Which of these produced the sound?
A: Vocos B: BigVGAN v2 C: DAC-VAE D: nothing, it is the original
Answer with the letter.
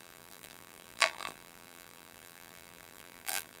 B